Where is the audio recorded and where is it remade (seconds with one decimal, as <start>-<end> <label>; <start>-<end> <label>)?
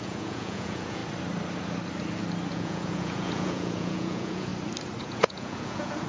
0.0-1.0 remade; 1.0-2.5 recorded; 2.5-4.5 remade; 4.5-5.0 recorded; 5.0-6.1 remade